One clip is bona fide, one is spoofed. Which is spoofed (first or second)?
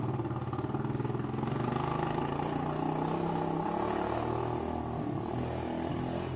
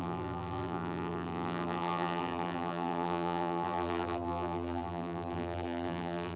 second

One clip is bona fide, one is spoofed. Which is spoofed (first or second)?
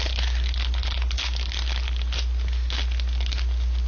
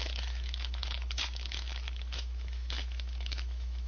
second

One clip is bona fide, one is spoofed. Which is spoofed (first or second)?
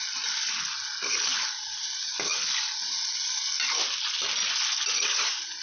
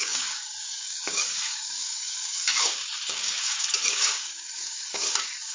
second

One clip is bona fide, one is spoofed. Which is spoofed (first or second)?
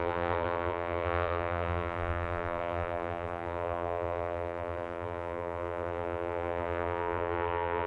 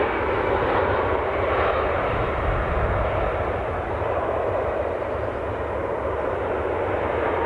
first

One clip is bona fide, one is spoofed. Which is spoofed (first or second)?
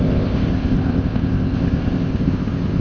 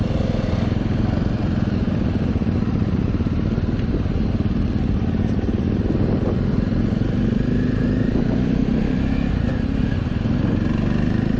first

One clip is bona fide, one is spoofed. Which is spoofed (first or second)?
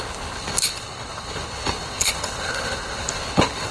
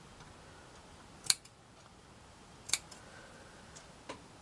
first